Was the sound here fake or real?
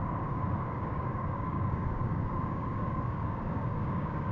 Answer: fake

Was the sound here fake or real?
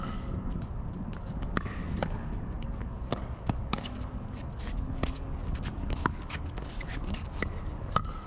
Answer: fake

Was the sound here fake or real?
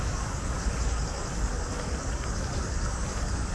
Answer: fake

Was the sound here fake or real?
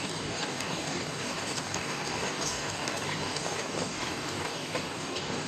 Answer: fake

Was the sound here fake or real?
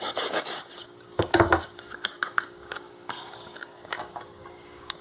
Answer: fake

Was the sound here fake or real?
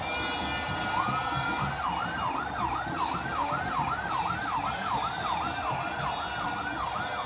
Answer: real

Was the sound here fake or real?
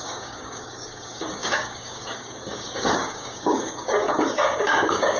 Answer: fake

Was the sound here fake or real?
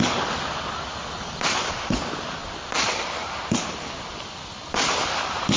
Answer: real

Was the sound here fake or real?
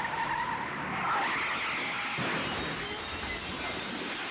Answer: real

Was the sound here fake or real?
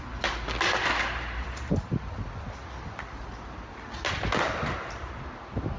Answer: real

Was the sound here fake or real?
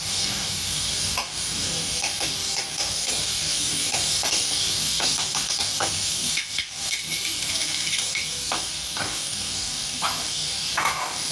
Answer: fake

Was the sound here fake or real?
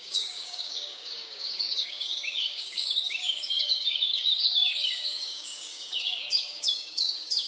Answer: fake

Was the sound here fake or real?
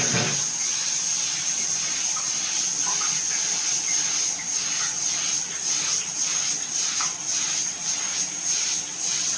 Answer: real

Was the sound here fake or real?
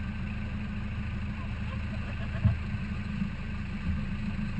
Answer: real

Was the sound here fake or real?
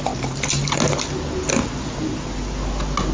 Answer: real